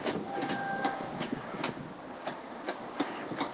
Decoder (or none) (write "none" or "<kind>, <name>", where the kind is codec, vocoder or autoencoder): codec, DAC